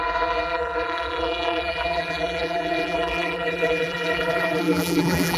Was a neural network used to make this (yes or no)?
yes